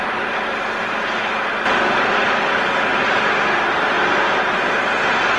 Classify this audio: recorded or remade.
recorded